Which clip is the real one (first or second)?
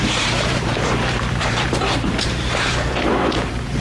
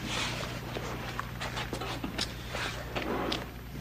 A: second